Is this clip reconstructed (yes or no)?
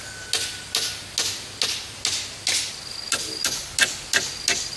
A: no